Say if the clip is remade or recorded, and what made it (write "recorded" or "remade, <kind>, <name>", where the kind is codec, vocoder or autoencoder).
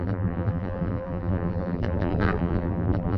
remade, vocoder, BigVGAN v2